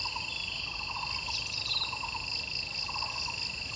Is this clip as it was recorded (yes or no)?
yes